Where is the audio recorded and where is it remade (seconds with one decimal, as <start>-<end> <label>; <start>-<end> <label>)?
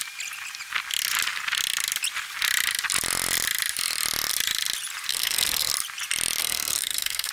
0.0-5.1 recorded; 5.1-5.7 remade; 5.7-6.4 recorded; 6.4-7.3 remade